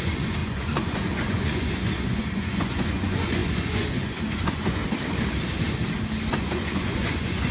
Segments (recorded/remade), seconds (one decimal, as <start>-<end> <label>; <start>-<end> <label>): 0.0-4.8 remade; 4.8-6.3 recorded; 6.3-7.5 remade